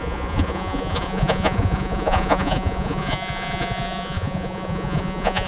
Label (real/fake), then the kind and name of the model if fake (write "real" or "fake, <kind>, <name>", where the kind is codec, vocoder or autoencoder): fake, vocoder, Vocos